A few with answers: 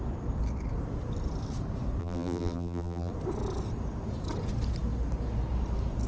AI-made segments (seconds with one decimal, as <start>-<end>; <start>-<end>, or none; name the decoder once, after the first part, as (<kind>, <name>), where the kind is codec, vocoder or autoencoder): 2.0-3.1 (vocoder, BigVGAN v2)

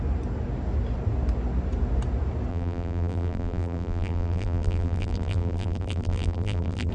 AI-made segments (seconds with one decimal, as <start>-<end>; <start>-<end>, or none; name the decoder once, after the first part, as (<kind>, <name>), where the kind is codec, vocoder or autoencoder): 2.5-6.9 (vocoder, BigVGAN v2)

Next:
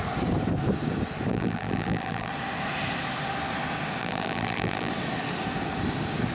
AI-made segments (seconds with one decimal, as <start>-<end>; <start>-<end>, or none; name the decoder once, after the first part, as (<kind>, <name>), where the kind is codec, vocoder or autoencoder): 1.3-2.3 (vocoder, BigVGAN v2); 4.0-4.9

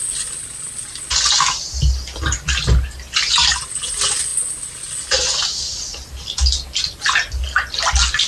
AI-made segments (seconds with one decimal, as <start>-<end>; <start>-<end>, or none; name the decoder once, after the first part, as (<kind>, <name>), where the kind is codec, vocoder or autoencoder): none